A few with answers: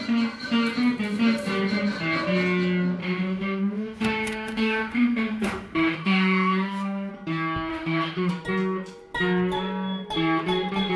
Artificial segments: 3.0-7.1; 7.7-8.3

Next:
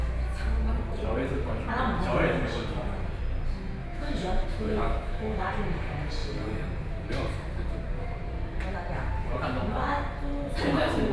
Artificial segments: 3.8-5.5

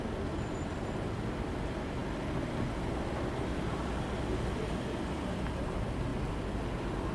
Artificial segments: none